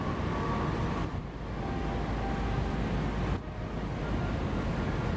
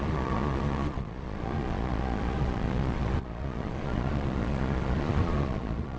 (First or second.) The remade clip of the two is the second